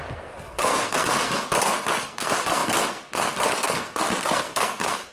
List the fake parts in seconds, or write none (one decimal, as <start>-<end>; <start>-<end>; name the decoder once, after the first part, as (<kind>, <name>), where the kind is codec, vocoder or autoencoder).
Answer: 0.0-5.1 (codec, SNAC)